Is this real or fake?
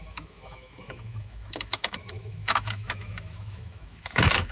fake